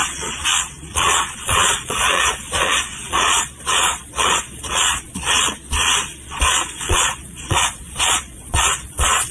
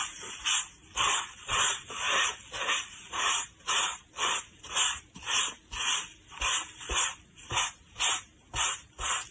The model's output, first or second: first